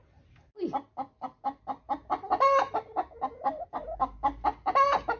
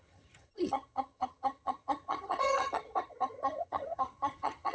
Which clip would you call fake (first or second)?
second